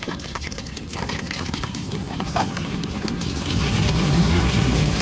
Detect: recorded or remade remade